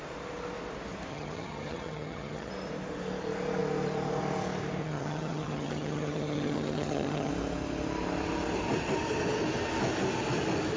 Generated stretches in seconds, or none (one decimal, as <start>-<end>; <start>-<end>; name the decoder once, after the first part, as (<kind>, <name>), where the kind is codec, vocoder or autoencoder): 1.1-2.5 (vocoder, HiFi-GAN); 4.8-7.3